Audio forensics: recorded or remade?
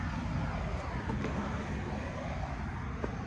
recorded